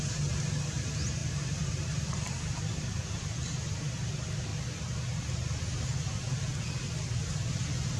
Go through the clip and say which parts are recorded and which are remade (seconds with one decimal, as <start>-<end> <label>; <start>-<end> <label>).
0.0-1.2 recorded; 1.2-3.3 remade; 3.3-8.0 recorded

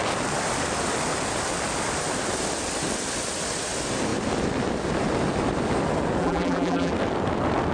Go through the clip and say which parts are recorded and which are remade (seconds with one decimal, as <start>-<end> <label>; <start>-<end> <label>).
0.0-6.2 recorded; 6.2-6.9 remade; 6.9-7.7 recorded

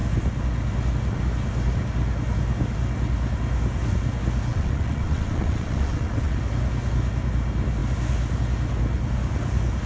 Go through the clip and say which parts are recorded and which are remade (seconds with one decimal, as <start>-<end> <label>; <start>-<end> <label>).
0.0-4.5 recorded; 4.5-6.4 remade; 6.4-9.9 recorded

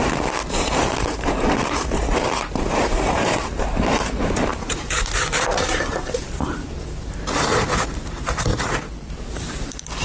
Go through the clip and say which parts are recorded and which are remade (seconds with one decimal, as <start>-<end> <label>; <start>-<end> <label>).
0.0-8.5 remade; 8.5-9.1 recorded; 9.1-10.0 remade